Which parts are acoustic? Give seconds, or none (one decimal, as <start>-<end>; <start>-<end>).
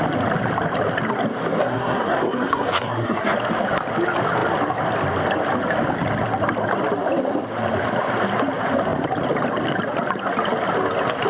0.0-1.6; 3.3-11.3